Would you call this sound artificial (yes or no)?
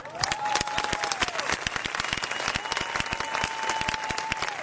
no